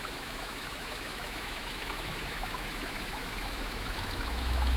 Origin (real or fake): fake